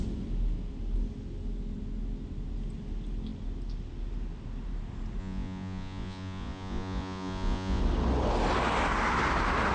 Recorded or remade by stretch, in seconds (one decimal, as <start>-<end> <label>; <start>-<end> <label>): 0.0-5.2 recorded; 5.2-7.8 remade; 7.8-9.7 recorded

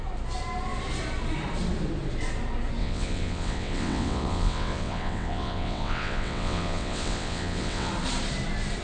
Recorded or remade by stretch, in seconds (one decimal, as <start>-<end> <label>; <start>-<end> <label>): 0.0-2.8 recorded; 2.8-7.9 remade; 7.9-8.8 recorded

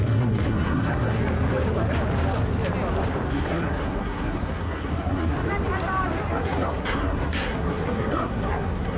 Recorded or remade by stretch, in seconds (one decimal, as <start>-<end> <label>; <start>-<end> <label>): 0.0-1.2 remade; 1.2-3.3 recorded; 3.3-5.3 remade; 5.3-6.3 recorded; 6.3-9.0 remade

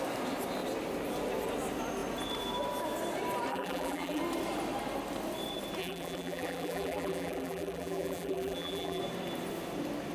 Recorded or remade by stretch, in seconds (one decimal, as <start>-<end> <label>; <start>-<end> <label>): 0.0-3.5 recorded; 3.5-4.2 remade; 4.2-5.8 recorded; 5.8-9.0 remade; 9.0-10.1 recorded